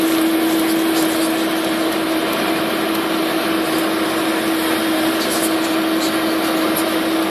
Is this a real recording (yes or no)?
yes